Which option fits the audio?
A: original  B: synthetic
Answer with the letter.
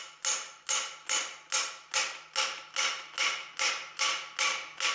A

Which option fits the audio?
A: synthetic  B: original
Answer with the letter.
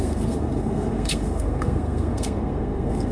A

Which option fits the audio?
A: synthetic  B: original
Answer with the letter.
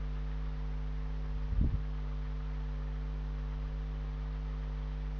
B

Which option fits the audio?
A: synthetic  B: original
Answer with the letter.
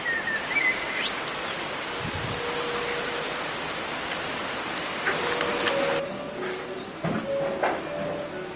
B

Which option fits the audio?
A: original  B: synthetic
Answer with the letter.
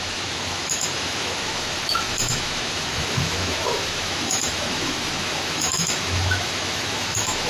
B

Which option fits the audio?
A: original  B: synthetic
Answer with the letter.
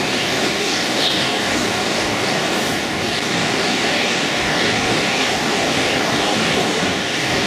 B